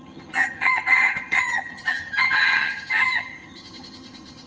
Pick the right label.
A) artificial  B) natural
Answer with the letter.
A